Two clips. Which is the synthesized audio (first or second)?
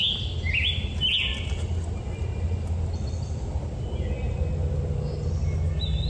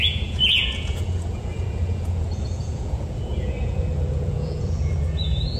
second